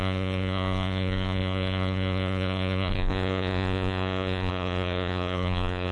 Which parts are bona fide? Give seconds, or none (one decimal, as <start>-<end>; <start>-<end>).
none